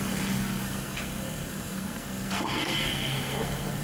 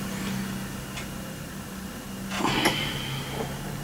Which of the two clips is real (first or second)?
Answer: second